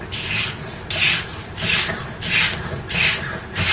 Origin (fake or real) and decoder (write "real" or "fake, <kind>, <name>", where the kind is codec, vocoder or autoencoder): real